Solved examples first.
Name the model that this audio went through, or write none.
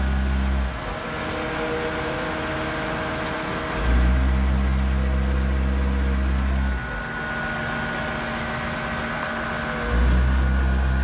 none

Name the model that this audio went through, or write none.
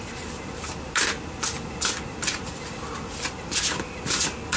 none